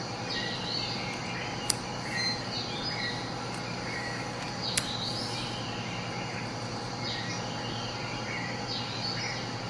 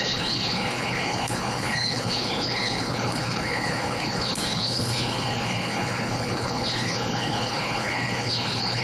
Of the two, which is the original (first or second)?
first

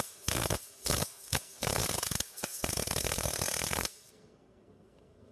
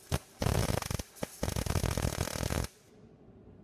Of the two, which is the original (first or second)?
second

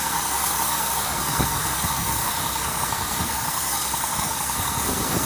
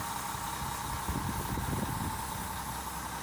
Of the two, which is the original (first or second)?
second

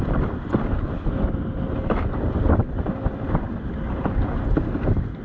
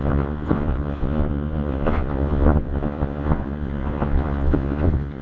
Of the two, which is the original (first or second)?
first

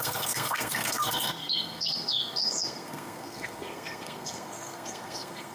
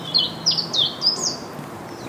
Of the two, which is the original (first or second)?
second